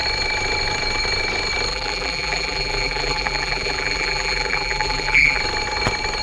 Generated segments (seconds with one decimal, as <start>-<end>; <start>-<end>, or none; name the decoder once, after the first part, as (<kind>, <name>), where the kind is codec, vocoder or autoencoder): 1.7-5.4 (vocoder, BigVGAN v2)